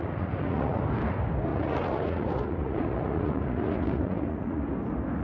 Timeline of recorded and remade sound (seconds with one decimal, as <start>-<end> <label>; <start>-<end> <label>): 0.0-0.8 remade; 0.8-1.5 recorded; 1.5-4.6 remade; 4.6-5.2 recorded